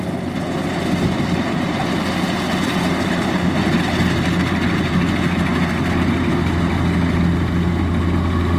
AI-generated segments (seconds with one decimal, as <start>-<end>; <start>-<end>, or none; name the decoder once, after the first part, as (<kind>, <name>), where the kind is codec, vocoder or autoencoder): none